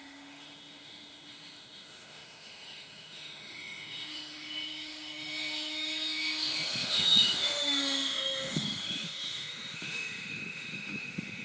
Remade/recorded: remade